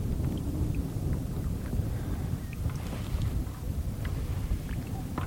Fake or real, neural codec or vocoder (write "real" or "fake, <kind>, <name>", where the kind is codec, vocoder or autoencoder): real